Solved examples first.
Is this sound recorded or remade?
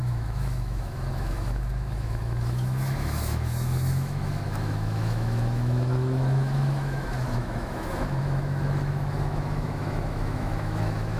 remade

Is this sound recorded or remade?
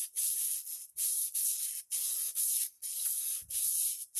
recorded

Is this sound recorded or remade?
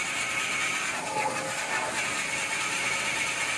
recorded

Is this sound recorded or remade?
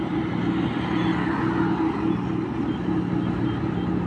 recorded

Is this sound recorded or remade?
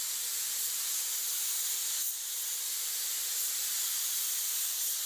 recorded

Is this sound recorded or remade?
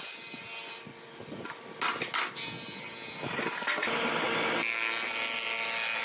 recorded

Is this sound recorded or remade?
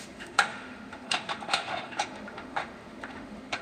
remade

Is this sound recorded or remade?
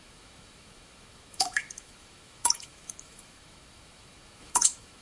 remade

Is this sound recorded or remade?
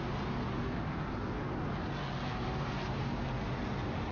recorded